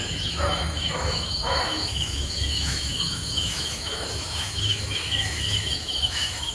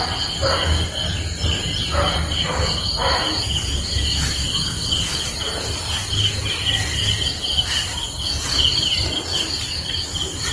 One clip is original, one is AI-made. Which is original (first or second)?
second